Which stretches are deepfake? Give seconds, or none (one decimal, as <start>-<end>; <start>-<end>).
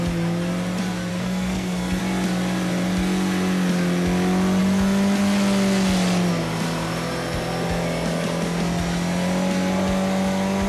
1.1-2.0